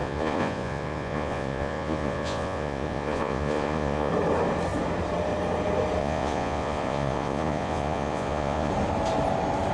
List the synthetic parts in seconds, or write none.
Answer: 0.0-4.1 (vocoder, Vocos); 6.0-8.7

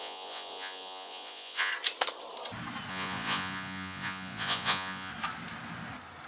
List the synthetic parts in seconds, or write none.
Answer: 0.0-1.7 (vocoder, Vocos); 2.9-5.1

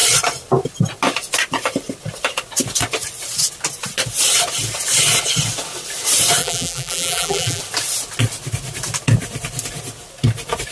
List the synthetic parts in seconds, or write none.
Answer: 6.4-7.6 (vocoder, BigVGAN v2)

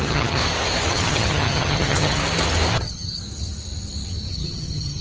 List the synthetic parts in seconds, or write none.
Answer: 0.0-0.4 (vocoder, HiFi-GAN); 0.9-2.2; 2.7-3.2; 4.3-5.0

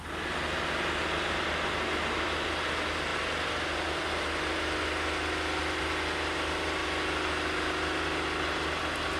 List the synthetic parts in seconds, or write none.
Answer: none

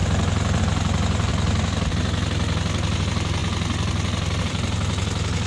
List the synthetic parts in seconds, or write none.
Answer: 0.0-1.3 (vocoder, BigVGAN v2); 3.0-3.4; 4.4-5.5

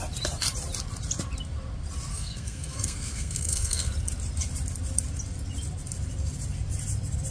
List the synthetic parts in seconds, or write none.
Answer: 2.1-3.9 (codec, SNAC)

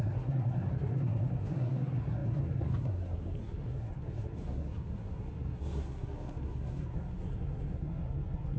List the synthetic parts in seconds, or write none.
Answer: 0.0-8.6 (codec, SNAC)